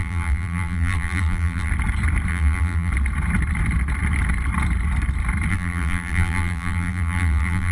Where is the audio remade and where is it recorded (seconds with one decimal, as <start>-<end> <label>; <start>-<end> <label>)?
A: 0.0-1.7 remade; 1.7-2.3 recorded; 2.3-2.9 remade; 2.9-5.5 recorded; 5.5-7.7 remade